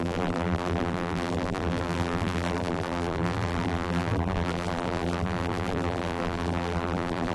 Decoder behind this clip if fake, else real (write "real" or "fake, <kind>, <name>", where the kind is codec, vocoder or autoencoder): fake, vocoder, BigVGAN v2